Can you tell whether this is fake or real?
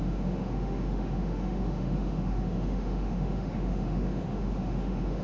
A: fake